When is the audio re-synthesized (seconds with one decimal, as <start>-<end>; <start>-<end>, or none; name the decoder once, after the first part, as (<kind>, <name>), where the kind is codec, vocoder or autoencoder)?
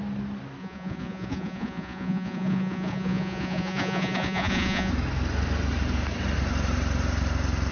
0.6-4.9 (vocoder, Vocos)